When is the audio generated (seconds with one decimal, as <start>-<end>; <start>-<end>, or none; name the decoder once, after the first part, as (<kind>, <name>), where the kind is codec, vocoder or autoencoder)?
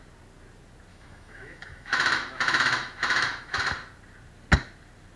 0.9-3.6 (autoencoder, DAC-VAE)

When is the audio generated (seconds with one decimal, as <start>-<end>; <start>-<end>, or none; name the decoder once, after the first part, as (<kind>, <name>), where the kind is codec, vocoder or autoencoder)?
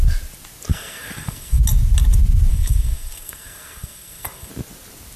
0.7-1.6 (codec, SNAC); 2.5-4.5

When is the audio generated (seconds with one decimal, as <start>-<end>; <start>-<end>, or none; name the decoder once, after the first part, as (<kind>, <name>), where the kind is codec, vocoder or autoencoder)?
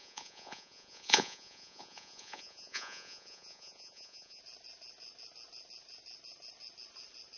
0.0-4.4 (vocoder, Vocos)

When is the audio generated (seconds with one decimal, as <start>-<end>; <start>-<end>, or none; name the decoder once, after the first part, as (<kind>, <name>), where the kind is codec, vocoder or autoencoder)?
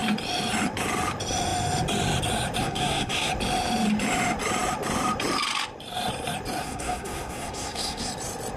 2.6-3.3 (codec, SNAC); 6.6-8.1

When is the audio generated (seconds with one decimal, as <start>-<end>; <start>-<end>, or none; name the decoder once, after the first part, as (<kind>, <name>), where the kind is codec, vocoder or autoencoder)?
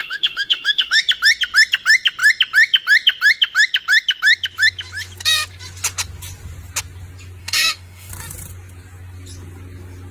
0.0-1.0 (autoencoder, DAC-VAE); 7.4-8.1